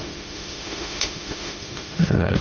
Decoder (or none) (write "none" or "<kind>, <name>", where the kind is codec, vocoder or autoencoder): autoencoder, DAC-VAE